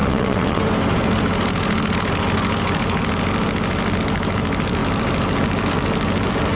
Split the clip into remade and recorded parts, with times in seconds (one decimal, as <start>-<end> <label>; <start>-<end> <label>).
0.0-0.6 remade; 0.6-6.6 recorded